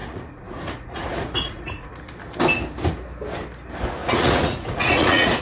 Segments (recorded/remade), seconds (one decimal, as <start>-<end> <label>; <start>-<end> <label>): 0.0-1.9 remade; 1.9-4.0 recorded; 4.0-5.4 remade